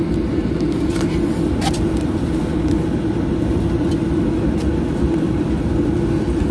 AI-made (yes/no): no